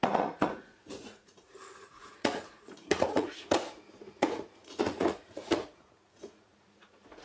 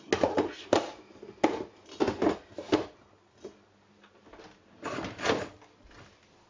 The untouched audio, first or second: second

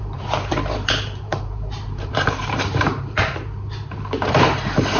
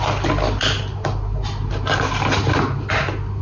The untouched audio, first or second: second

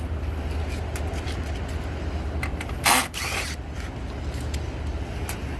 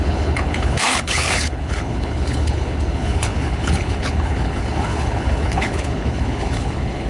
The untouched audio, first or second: first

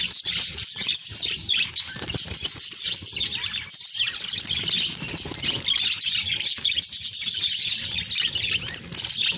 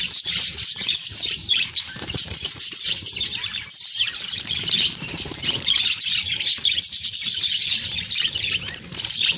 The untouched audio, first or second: first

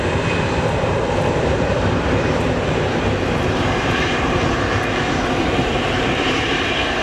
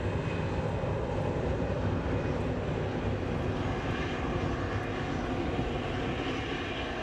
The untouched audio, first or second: second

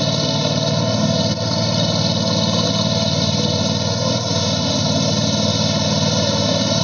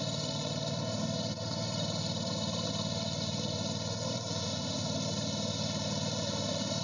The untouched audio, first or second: first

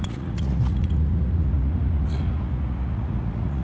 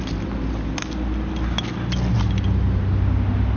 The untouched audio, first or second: second